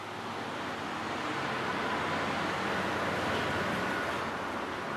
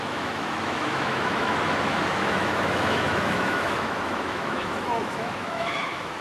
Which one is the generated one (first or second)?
second